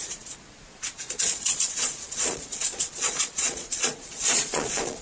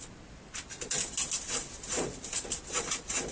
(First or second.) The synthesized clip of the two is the first